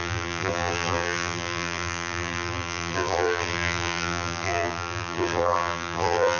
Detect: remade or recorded remade